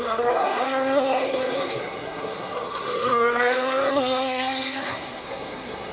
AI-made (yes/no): yes